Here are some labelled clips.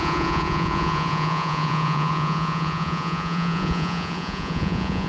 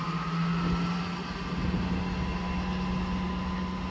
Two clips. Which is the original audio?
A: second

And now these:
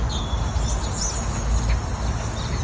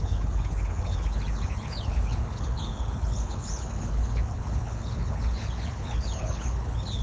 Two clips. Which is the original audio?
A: first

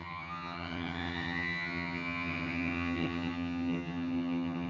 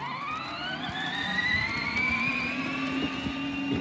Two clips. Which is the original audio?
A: second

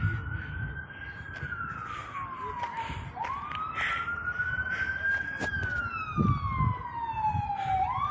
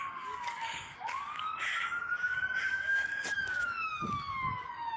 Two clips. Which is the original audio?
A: first